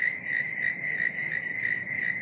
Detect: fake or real real